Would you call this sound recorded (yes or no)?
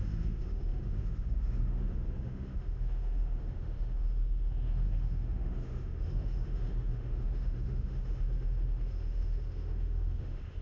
no